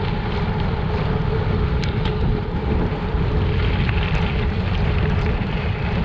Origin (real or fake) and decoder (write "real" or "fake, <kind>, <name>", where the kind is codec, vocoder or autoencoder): fake, vocoder, BigVGAN v2